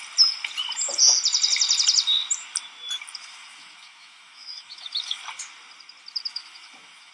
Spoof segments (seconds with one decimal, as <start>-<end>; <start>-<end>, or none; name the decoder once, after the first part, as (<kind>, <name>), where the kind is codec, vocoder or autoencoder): 3.2-5.2 (autoencoder, DAC-VAE); 6.3-7.1